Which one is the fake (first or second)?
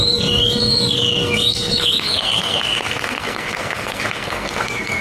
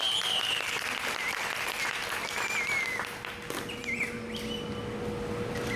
first